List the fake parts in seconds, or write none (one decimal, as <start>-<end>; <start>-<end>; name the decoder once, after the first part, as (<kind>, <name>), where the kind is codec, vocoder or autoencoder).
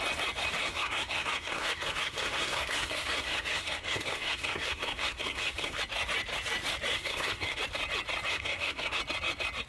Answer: 0.6-5.8 (codec, SNAC); 6.9-7.6; 8.3-9.0